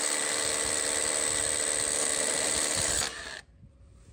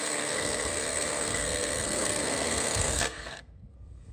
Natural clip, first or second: first